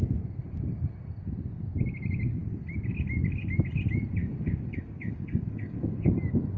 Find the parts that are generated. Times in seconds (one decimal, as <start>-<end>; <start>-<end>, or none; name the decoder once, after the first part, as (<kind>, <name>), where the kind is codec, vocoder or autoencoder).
4.2-6.1 (codec, DAC)